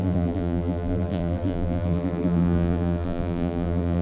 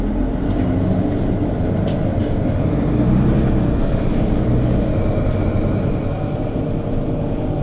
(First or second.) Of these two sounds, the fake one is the first